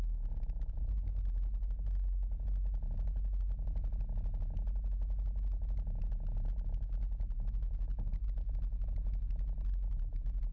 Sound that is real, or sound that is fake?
real